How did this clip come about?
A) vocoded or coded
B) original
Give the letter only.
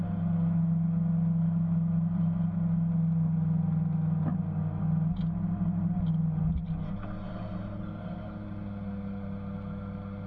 B